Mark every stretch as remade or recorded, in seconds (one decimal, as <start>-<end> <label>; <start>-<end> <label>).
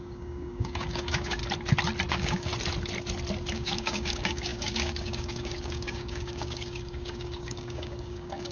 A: 0.0-1.4 remade; 1.4-2.1 recorded; 2.1-2.5 remade; 2.5-3.5 recorded; 3.5-8.5 remade